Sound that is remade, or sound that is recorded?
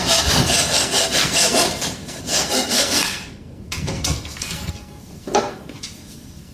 remade